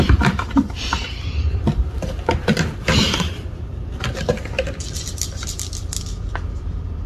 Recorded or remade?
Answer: remade